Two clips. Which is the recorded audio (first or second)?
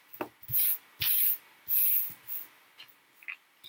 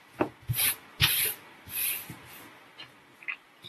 first